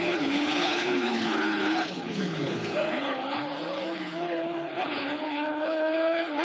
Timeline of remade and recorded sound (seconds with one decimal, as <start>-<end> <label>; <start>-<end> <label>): 0.0-6.4 remade